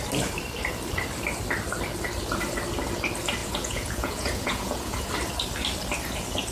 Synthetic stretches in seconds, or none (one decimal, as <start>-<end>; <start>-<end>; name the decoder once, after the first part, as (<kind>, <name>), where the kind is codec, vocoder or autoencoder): 3.4-5.1 (vocoder, Vocos)